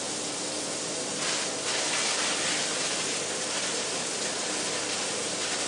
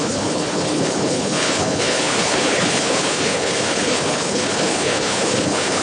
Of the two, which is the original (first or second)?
first